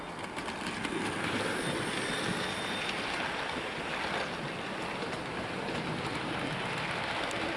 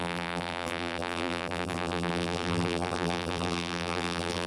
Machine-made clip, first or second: second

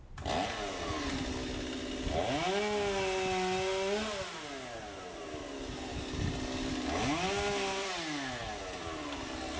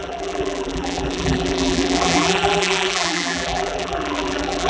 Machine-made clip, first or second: second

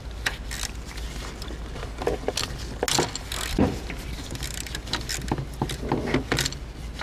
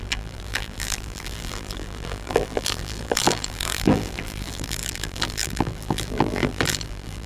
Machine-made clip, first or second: second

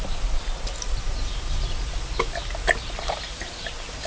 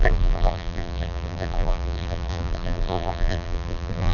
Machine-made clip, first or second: second